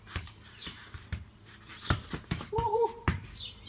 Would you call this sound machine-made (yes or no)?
yes